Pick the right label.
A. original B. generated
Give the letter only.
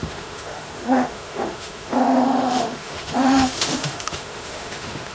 B